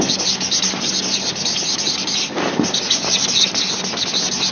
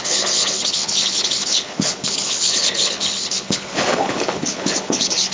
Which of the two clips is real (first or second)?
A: first